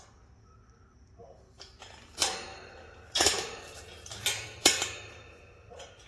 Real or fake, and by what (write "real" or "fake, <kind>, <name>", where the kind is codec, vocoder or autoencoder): fake, vocoder, BigVGAN v2